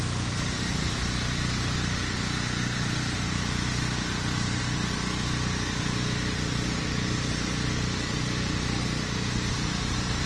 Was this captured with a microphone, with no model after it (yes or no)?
yes